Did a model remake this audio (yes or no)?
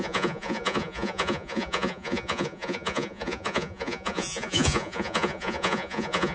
yes